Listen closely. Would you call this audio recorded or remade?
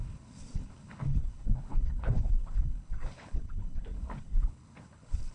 remade